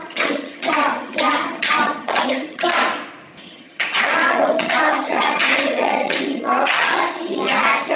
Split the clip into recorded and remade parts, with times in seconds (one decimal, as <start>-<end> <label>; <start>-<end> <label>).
0.0-2.7 remade; 2.7-3.4 recorded; 3.4-8.0 remade